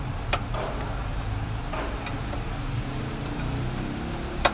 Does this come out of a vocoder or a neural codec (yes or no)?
no